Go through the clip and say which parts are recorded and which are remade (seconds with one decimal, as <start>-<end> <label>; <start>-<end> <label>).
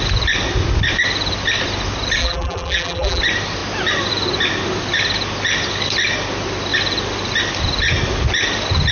0.0-2.2 recorded; 2.2-3.2 remade; 3.2-8.9 recorded